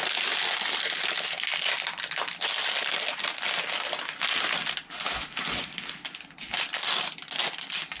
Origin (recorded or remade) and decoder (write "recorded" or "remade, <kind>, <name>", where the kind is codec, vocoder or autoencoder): recorded